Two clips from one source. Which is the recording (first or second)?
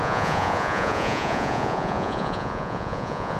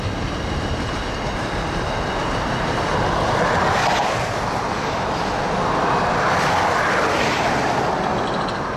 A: second